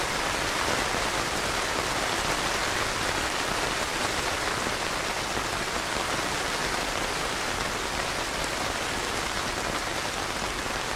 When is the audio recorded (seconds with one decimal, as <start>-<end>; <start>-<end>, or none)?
0.0-11.0